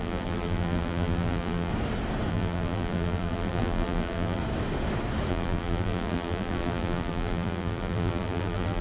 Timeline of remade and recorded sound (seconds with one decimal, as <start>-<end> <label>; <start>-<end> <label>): 0.0-1.7 remade; 1.7-2.3 recorded; 2.3-4.4 remade; 4.4-5.3 recorded; 5.3-8.8 remade